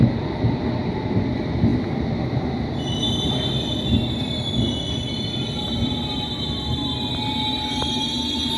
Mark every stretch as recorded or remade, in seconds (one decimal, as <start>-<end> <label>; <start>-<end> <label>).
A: 0.0-8.6 recorded